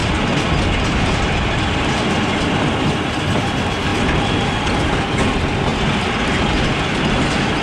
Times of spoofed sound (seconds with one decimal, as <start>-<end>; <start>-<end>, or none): none